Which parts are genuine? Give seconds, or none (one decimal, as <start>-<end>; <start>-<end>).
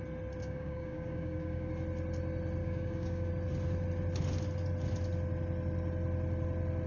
0.0-0.4; 1.7-2.6; 3.3-6.9